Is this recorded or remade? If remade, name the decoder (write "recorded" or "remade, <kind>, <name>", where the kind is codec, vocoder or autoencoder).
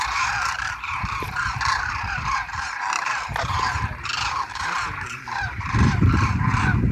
remade, vocoder, BigVGAN v2